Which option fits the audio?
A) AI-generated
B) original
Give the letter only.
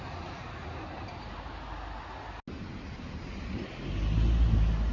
B